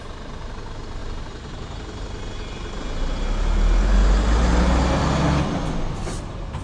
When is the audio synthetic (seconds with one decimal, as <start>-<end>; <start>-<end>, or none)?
none